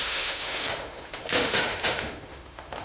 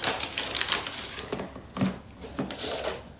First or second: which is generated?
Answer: first